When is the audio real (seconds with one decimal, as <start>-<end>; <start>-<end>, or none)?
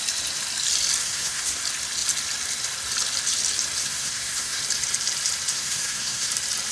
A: 0.0-1.0; 1.6-3.8; 4.6-5.5; 6.3-6.7